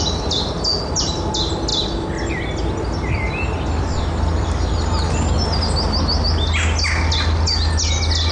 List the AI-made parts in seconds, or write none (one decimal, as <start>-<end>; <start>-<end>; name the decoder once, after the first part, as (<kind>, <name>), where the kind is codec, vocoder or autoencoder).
none